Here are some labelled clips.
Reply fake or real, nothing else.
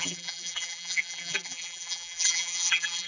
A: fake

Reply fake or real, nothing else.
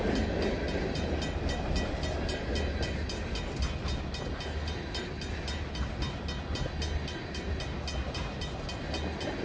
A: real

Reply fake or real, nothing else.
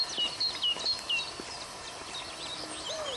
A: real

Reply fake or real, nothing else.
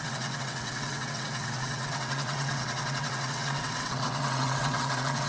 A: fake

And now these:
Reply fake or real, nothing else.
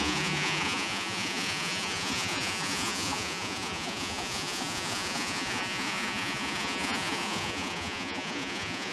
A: fake